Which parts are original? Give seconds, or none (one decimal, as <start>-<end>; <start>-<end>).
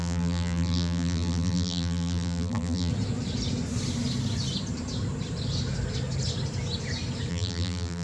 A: 2.9-7.3